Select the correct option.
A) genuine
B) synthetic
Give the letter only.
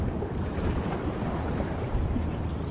B